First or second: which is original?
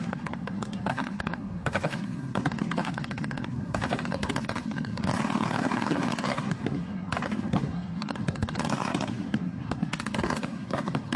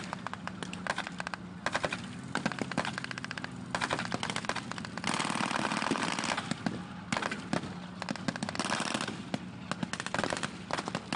second